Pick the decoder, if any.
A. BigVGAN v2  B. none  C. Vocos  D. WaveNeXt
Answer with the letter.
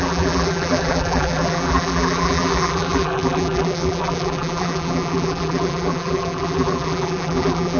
A